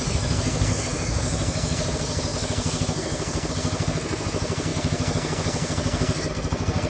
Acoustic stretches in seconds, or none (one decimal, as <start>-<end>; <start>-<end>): none